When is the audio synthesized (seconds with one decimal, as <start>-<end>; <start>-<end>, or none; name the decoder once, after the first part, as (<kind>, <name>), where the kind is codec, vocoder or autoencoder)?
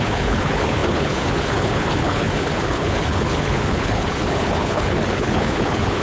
0.0-6.0 (codec, HILCodec)